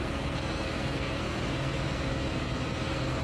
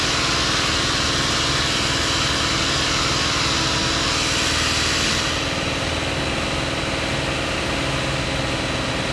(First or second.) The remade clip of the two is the first